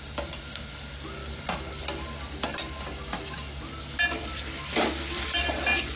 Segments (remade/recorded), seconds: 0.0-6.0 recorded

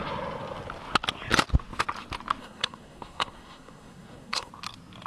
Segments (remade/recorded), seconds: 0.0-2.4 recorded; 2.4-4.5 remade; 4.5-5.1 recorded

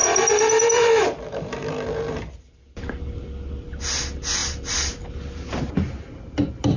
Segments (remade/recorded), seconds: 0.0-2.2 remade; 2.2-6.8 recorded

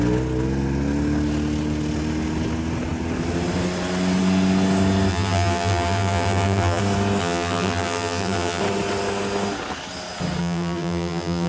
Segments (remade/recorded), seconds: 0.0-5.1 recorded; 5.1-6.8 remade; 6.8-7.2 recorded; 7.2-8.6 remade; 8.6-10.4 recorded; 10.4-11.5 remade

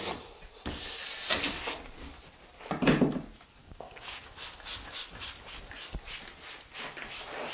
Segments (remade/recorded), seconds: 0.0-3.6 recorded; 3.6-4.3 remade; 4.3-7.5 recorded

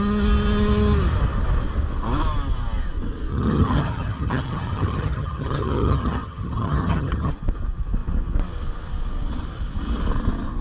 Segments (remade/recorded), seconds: 0.0-3.3 recorded; 3.3-7.3 remade; 7.3-10.6 recorded